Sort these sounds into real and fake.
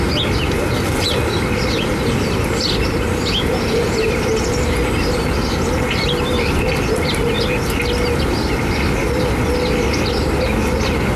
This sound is real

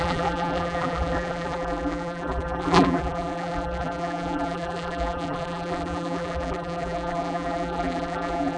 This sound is fake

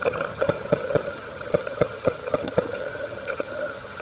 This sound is fake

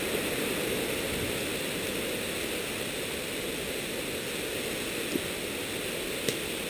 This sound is real